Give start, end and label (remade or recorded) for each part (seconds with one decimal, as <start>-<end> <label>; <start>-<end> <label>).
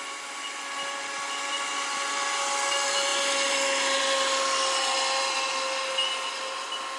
0.0-7.0 recorded